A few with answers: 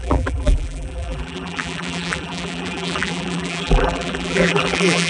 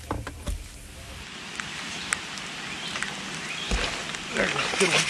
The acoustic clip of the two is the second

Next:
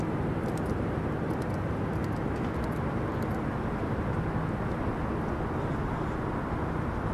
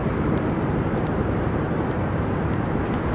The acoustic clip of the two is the first